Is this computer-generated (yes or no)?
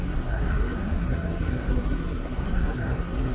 yes